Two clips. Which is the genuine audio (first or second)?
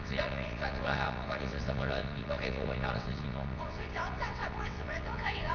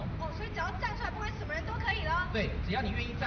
second